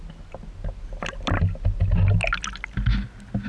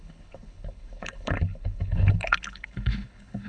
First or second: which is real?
first